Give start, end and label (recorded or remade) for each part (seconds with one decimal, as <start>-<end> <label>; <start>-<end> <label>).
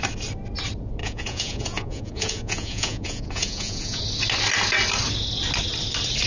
0.0-1.0 recorded; 1.0-4.0 remade; 4.0-6.3 recorded